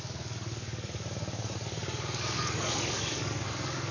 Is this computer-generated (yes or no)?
yes